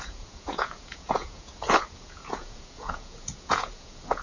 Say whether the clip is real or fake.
fake